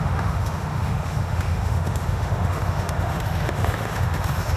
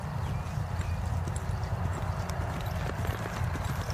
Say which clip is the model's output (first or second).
first